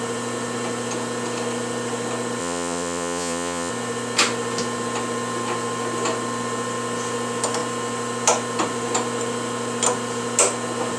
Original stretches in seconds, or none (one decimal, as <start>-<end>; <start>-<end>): 0.0-2.4; 3.7-11.0

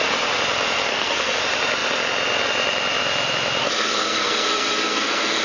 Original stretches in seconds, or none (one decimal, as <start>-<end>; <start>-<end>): 0.0-0.9; 1.4-3.6

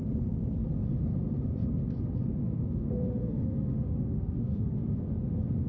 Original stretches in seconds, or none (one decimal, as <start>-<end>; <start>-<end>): 0.0-2.4; 5.0-5.7

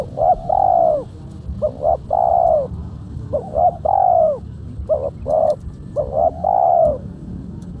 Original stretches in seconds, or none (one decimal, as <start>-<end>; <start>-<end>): 0.0-2.8; 4.7-6.2